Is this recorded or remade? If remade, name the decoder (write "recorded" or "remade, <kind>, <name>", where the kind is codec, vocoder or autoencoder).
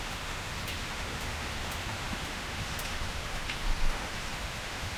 remade, autoencoder, DAC-VAE